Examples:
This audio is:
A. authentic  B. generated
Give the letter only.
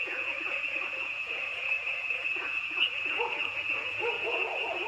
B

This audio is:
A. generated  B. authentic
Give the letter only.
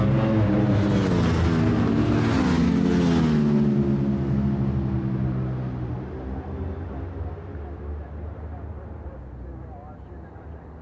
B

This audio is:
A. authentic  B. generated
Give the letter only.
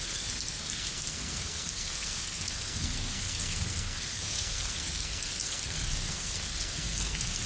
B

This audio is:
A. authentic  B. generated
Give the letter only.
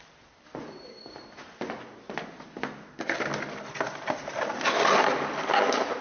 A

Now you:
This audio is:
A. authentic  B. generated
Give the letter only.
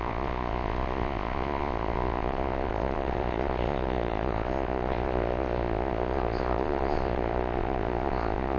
B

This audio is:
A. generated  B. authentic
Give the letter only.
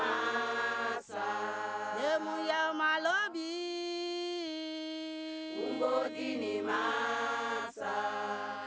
B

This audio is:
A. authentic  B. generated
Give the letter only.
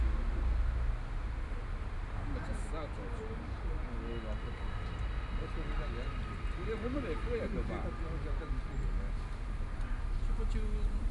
A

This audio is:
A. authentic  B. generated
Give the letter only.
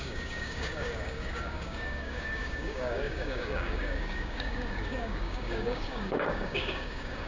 B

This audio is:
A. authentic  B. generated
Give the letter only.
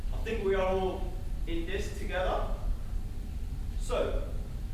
B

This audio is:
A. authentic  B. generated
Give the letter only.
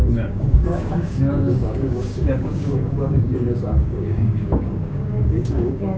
B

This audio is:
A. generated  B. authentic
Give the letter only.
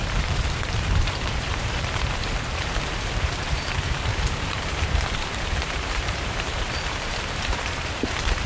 A